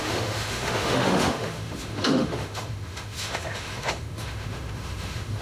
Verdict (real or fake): fake